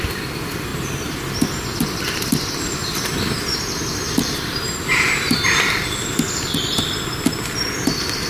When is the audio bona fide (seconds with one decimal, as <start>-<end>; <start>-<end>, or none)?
0.0-2.8; 5.7-8.3

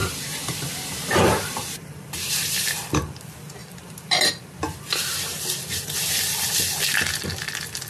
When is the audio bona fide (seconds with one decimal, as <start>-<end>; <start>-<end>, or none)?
2.3-3.6; 4.3-7.9

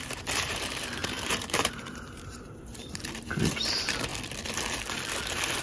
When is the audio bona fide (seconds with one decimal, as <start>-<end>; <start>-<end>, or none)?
4.1-5.6

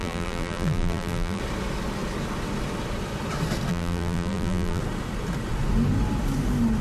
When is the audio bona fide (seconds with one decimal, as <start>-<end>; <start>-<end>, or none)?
1.4-3.7; 4.8-6.8

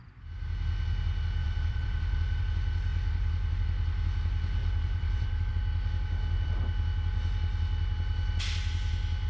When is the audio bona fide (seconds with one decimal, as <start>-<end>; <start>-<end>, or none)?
0.0-1.4; 2.4-4.6; 5.5-9.3

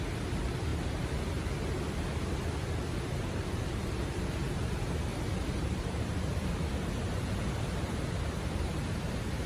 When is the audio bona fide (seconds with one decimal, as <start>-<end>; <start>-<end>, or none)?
0.7-2.8

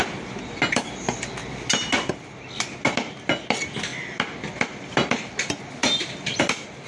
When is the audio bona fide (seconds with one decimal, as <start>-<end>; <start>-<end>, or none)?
0.0-5.8; 6.4-6.9